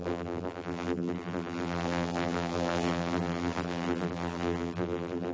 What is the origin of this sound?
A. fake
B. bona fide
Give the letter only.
A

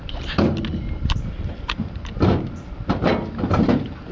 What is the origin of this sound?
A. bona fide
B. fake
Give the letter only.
A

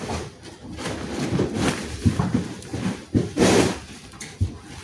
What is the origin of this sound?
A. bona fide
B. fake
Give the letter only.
A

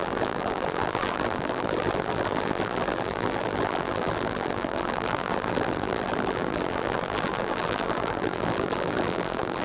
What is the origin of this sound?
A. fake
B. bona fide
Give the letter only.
A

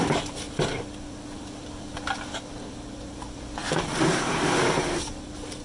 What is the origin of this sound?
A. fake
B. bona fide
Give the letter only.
A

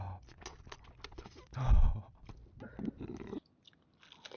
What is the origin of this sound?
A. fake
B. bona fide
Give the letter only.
B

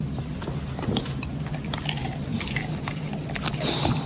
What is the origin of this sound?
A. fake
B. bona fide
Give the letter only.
A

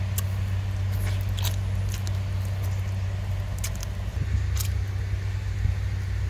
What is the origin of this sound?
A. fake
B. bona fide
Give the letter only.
B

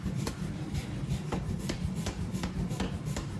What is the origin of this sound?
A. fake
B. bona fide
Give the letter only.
A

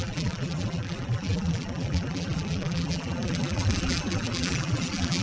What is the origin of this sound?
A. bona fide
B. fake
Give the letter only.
B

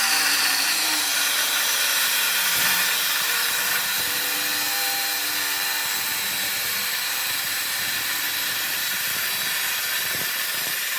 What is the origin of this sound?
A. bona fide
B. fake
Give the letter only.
B